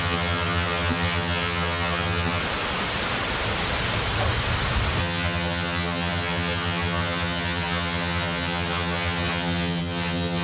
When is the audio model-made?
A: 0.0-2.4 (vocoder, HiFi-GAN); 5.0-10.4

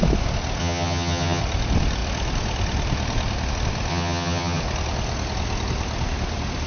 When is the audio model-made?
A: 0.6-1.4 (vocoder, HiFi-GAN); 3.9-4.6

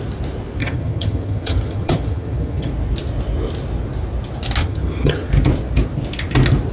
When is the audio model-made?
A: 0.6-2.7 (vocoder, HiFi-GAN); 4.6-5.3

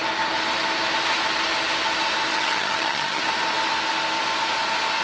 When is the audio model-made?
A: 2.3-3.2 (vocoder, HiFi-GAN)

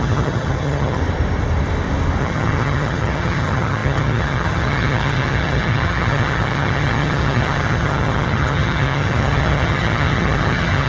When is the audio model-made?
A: 0.0-1.0 (vocoder, HiFi-GAN); 2.2-10.9